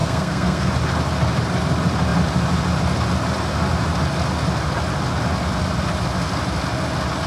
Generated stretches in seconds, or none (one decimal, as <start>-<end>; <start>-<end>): 0.0-0.7